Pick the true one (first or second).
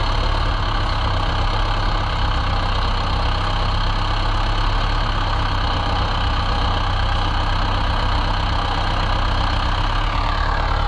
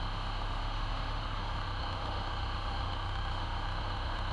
first